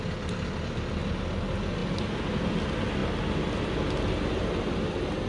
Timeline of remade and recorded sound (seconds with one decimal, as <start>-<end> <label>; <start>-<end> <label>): 0.0-5.3 recorded